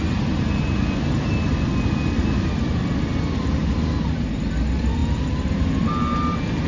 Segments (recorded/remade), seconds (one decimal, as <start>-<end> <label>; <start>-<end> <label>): 0.0-5.0 recorded; 5.0-5.9 remade; 5.9-6.7 recorded